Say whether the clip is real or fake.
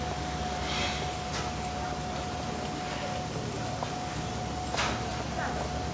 real